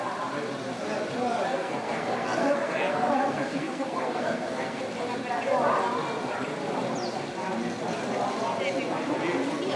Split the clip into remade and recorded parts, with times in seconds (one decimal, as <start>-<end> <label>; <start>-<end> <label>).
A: 0.0-1.5 recorded; 1.5-4.8 remade; 4.8-9.8 recorded